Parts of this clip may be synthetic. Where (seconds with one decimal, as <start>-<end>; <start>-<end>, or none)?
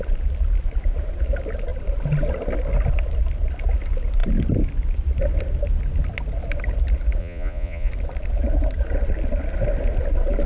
7.2-7.9